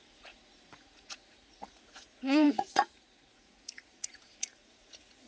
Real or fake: fake